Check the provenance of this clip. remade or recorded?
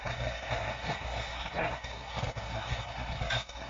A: remade